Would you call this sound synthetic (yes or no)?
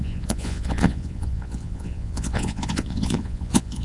yes